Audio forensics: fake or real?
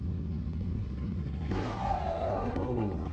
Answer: fake